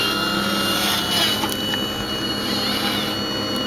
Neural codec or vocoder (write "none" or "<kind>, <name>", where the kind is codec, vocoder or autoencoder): none